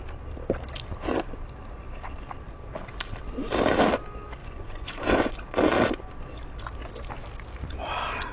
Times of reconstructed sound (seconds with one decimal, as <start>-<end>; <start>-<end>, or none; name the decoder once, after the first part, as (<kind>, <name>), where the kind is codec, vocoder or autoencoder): 4.4-5.4 (vocoder, Vocos)